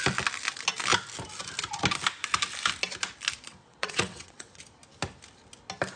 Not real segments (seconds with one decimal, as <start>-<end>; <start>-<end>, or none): 3.5-4.6